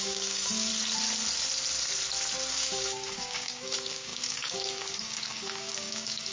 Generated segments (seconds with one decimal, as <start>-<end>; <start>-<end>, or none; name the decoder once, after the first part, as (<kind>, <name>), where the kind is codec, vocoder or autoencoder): 0.0-0.7 (codec, DAC); 2.5-6.3